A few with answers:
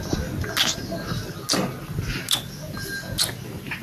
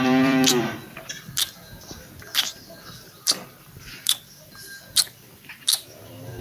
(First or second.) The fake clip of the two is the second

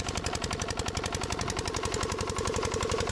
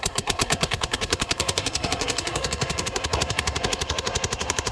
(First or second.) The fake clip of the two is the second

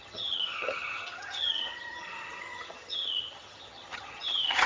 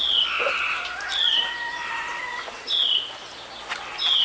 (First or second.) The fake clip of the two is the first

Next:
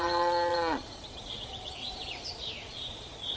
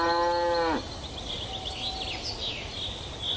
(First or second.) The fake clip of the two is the first